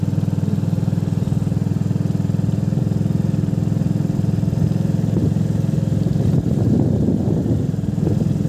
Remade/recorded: recorded